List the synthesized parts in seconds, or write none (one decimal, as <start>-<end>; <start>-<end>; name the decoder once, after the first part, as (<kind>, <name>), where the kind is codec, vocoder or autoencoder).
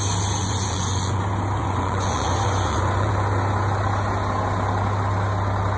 0.4-1.2 (vocoder, Vocos); 1.6-3.1